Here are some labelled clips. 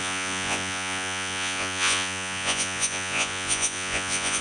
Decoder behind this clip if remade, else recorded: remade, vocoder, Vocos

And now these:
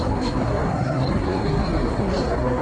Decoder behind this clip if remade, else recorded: remade, codec, SNAC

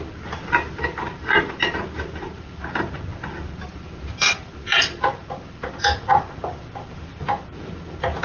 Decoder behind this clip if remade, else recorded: recorded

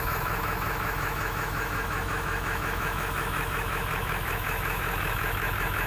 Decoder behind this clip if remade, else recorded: remade, autoencoder, DAC-VAE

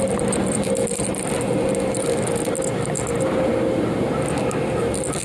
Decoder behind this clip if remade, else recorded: recorded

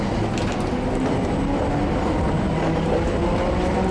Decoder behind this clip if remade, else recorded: recorded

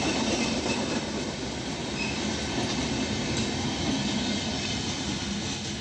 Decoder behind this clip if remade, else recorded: recorded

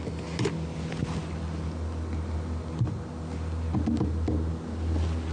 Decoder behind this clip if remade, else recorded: recorded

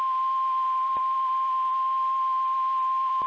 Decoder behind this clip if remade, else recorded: remade, vocoder, BigVGAN v2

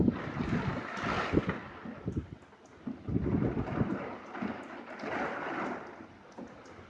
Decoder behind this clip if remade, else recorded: recorded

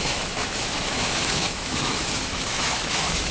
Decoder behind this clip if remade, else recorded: remade, autoencoder, DAC-VAE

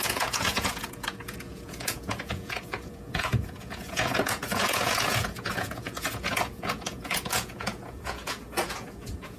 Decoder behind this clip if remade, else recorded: remade, vocoder, Vocos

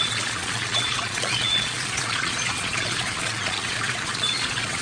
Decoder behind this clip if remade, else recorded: remade, vocoder, Vocos